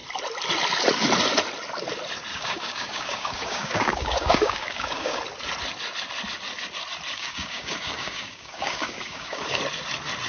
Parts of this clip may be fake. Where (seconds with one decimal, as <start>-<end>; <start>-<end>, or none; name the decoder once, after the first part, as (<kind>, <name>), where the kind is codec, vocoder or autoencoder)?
2.3-5.2 (codec, DAC); 7.1-9.6